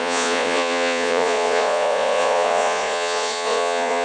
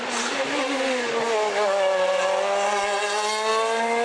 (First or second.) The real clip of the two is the second